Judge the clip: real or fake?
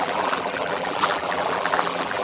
fake